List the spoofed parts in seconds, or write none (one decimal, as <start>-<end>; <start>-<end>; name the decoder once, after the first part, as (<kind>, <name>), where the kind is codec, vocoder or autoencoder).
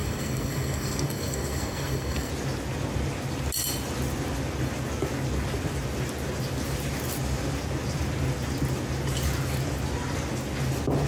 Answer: 0.0-2.3 (codec, SNAC)